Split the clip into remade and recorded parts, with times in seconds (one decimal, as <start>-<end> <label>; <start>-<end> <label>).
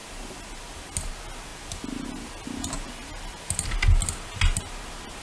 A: 0.0-5.2 recorded